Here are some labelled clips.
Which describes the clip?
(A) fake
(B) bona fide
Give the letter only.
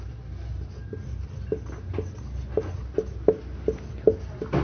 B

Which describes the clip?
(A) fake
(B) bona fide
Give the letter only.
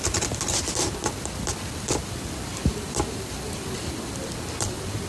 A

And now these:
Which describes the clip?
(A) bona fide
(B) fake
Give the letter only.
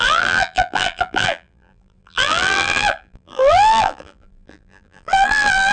B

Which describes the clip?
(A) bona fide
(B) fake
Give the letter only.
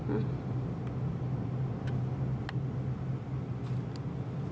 A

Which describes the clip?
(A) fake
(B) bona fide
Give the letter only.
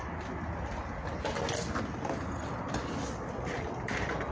B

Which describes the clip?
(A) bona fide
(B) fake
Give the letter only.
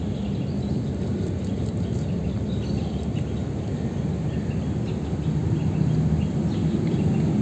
A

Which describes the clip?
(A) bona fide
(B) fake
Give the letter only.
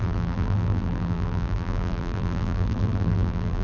B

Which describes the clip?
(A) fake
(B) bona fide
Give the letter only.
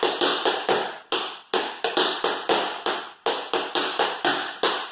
B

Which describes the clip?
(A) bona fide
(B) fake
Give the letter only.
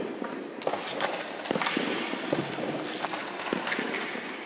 A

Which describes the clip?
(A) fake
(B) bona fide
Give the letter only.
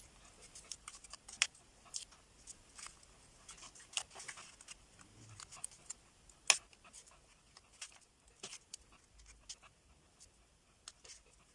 B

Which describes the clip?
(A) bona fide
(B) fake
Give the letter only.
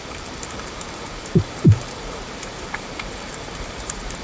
B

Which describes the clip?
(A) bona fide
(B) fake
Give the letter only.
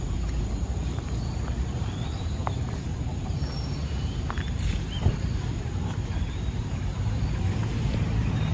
B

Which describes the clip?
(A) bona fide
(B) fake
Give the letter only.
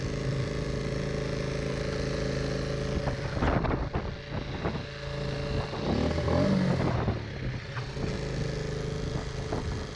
A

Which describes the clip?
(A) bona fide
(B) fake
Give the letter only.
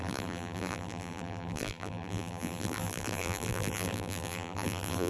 B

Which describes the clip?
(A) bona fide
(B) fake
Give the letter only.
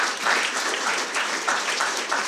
B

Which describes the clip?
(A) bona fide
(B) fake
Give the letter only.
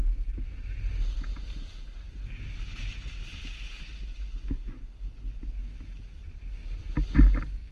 A